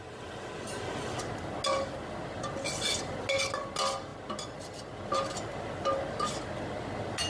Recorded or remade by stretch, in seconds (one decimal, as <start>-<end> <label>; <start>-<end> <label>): 0.0-7.3 recorded